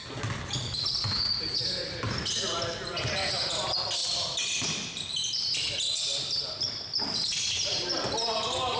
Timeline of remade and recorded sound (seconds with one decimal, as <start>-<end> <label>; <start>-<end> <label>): 0.0-8.8 recorded